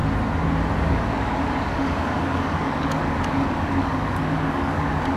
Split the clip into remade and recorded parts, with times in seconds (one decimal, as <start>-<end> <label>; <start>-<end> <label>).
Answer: 0.0-0.8 recorded; 0.8-5.2 remade